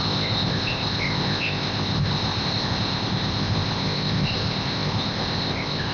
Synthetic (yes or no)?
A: yes